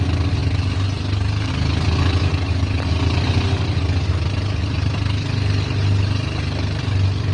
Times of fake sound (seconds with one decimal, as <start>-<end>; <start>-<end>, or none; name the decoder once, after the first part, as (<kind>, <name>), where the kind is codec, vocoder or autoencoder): none